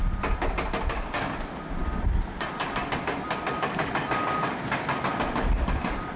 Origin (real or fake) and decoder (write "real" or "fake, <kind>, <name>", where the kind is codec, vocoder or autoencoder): real